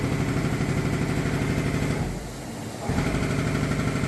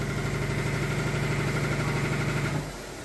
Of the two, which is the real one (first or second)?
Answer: second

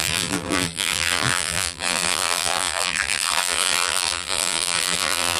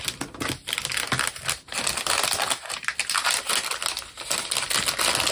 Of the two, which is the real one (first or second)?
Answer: second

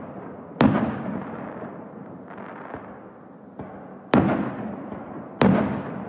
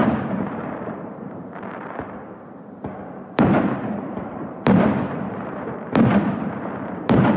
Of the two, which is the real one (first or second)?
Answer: first